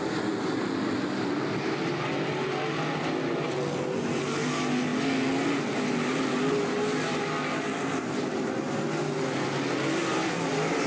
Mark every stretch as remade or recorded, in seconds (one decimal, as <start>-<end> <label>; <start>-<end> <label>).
0.0-10.0 recorded; 10.0-10.9 remade